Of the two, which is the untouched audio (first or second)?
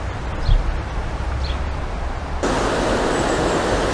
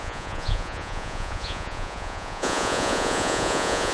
first